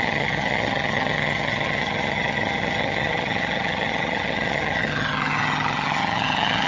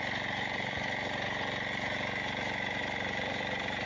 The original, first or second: second